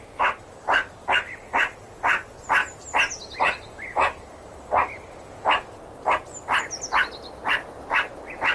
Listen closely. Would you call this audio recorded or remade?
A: recorded